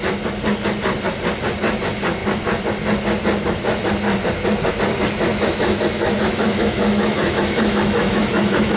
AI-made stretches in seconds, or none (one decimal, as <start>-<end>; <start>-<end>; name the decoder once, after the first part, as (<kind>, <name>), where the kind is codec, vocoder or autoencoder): 5.3-8.8 (autoencoder, DAC-VAE)